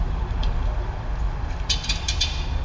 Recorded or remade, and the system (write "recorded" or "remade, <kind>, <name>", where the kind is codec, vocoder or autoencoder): remade, vocoder, BigVGAN v2